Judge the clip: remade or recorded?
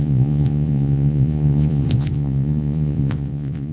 remade